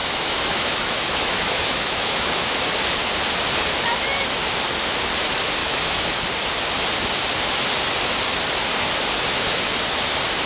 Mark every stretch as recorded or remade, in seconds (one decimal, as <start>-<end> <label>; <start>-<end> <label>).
0.0-2.5 remade; 2.5-5.6 recorded; 5.6-6.1 remade; 6.1-10.5 recorded

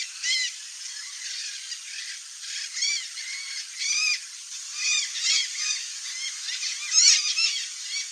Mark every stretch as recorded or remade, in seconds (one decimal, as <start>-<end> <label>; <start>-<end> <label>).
0.0-8.1 recorded

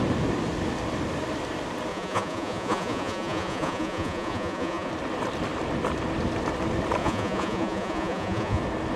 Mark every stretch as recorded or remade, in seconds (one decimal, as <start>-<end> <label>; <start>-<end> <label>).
0.0-1.9 recorded; 1.9-4.9 remade; 4.9-7.0 recorded; 7.0-8.6 remade; 8.6-9.0 recorded

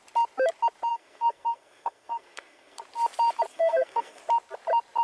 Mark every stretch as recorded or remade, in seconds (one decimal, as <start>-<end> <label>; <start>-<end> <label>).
0.0-0.9 recorded; 0.9-2.8 remade; 2.8-3.5 recorded; 3.5-4.2 remade; 4.2-5.0 recorded